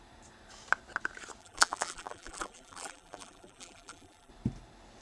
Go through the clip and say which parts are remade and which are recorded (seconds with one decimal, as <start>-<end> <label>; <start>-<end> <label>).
0.0-1.4 recorded; 1.4-4.3 remade; 4.3-5.0 recorded